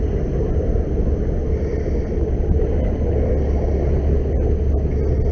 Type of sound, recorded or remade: recorded